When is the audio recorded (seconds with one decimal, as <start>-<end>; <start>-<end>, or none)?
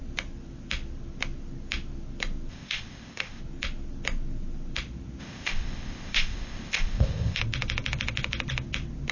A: 0.0-2.5; 3.4-5.2; 7.4-9.1